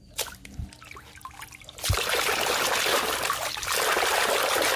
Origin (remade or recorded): recorded